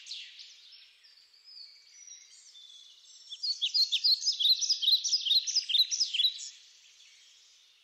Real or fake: real